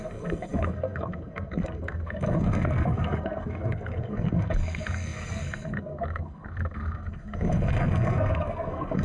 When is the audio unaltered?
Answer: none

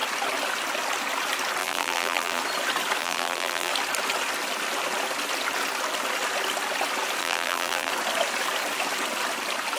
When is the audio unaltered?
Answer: 0.0-1.6; 2.4-3.0; 3.7-7.2; 7.9-9.8

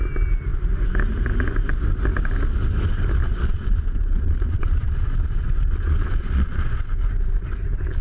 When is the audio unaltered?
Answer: 0.0-3.2; 6.8-8.0

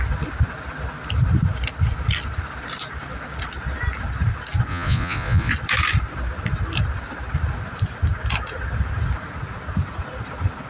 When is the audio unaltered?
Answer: 0.0-4.7; 5.5-10.7

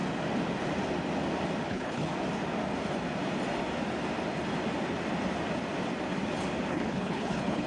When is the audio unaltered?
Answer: 0.0-1.7; 2.1-6.7

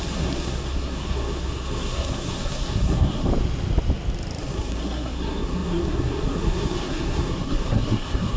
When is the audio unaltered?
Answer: 3.3-4.4

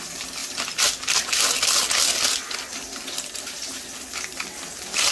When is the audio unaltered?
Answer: 0.0-5.1